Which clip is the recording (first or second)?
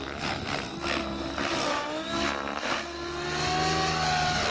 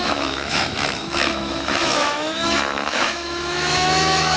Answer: first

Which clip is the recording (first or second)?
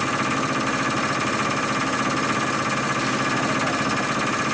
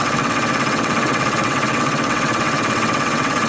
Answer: first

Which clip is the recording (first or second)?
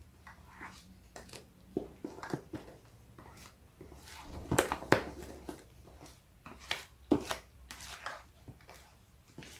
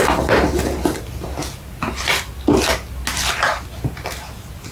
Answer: second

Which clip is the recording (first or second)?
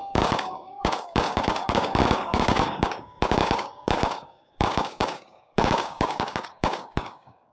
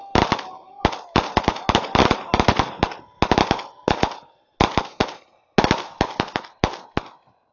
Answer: second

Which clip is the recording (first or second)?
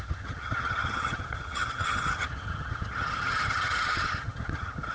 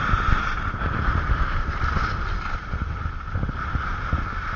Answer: second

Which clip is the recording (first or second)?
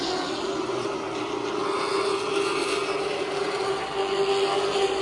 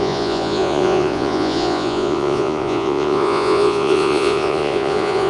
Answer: first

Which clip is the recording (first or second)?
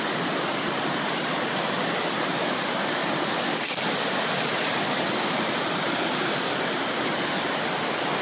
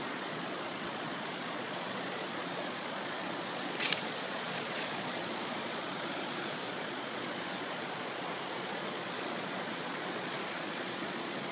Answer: first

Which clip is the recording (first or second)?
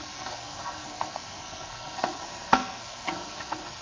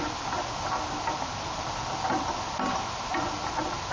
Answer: second